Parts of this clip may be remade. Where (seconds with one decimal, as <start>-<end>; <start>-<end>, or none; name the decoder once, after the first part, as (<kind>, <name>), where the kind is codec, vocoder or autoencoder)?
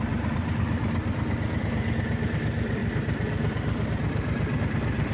0.0-1.0 (vocoder, BigVGAN v2); 2.2-5.1